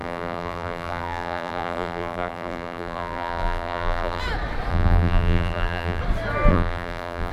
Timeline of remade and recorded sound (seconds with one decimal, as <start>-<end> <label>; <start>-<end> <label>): 0.0-4.2 remade; 4.2-4.7 recorded; 4.7-6.0 remade; 6.0-6.5 recorded; 6.5-7.3 remade